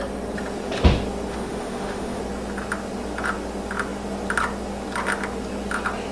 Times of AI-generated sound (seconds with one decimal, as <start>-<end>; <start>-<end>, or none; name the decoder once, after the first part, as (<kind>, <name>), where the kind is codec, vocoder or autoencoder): 1.3-2.2 (autoencoder, DAC-VAE)